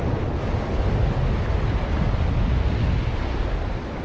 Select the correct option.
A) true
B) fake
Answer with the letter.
A